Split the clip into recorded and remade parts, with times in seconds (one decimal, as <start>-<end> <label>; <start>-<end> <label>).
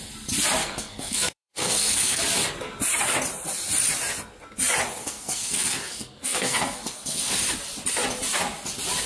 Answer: 0.0-0.6 recorded; 0.6-2.2 remade; 2.2-5.0 recorded; 5.0-7.3 remade; 7.3-9.1 recorded